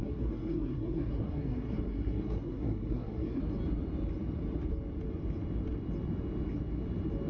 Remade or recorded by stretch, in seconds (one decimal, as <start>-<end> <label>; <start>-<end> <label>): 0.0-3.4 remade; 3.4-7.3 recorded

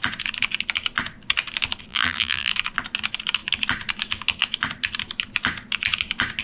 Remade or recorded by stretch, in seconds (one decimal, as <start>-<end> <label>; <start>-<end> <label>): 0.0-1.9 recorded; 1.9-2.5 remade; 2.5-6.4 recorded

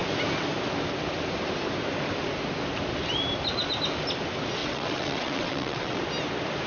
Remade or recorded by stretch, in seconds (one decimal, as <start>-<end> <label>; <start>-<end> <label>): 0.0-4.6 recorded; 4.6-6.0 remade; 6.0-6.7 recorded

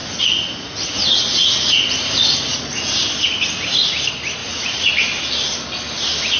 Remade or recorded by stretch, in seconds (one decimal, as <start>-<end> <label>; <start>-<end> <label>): 0.0-2.9 remade; 2.9-4.4 recorded; 4.4-4.9 remade; 4.9-6.4 recorded

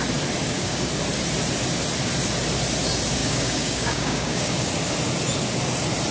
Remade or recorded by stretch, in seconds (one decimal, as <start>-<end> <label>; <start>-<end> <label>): 0.0-0.4 recorded; 0.4-0.9 remade; 0.9-3.2 recorded; 3.2-4.7 remade; 4.7-6.1 recorded